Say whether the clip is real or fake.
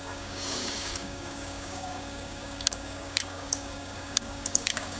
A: fake